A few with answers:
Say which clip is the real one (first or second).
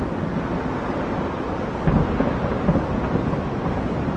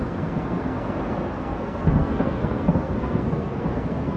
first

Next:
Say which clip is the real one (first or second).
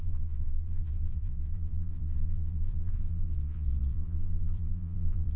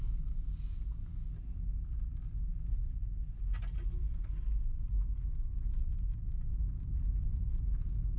second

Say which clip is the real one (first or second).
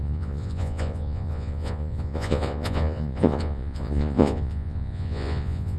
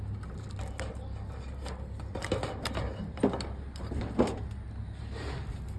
second